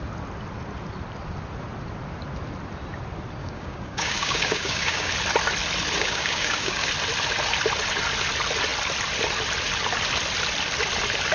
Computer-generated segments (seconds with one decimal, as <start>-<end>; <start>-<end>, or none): 3.4-5.1; 6.0-6.9